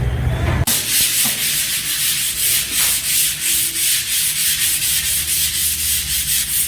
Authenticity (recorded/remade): recorded